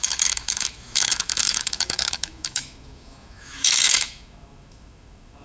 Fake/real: fake